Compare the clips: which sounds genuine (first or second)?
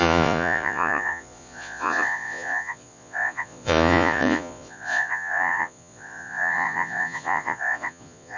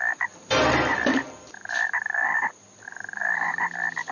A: second